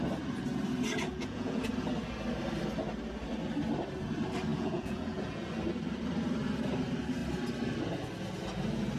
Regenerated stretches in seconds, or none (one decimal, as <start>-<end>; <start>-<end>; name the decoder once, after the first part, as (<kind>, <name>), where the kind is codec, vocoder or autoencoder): 1.1-1.7 (vocoder, Vocos); 4.5-5.5

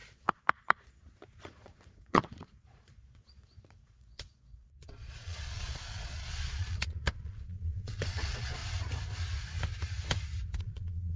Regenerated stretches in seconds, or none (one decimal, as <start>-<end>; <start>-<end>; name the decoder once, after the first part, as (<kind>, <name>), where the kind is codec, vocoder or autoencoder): 0.0-8.6 (vocoder, Vocos); 10.6-11.2